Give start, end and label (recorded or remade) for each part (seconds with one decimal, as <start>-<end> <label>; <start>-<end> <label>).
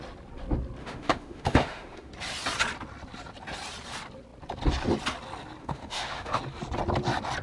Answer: 0.0-0.8 recorded; 0.8-2.1 remade; 2.1-5.6 recorded; 5.6-6.4 remade; 6.4-7.4 recorded